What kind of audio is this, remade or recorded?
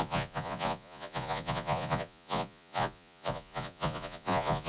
remade